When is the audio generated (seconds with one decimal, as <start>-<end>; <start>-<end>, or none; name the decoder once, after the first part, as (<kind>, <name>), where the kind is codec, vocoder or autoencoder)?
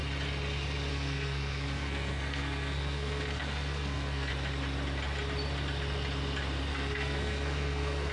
0.9-4.3 (codec, SNAC); 6.7-8.1